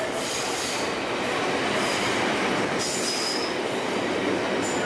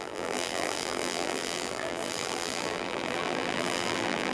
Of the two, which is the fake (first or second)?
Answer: second